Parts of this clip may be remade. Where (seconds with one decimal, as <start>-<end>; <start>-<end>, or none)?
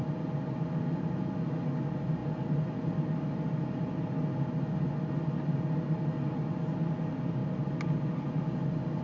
none